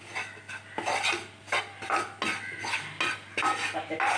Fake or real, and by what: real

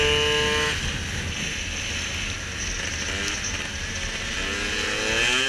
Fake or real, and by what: real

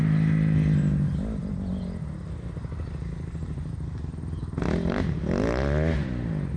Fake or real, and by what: real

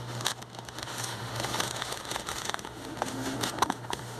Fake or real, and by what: fake, autoencoder, DAC-VAE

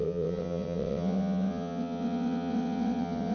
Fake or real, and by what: fake, vocoder, WaveNeXt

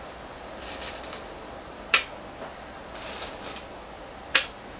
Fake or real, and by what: real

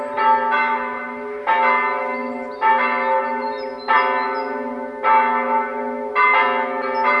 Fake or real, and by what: real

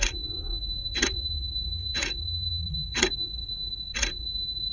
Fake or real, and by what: fake, vocoder, Vocos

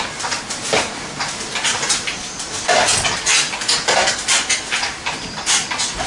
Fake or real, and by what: real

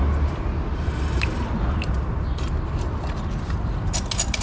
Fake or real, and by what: real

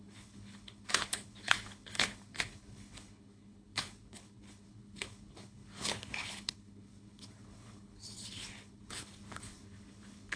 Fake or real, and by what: fake, codec, HILCodec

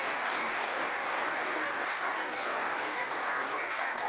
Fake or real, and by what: fake, codec, DAC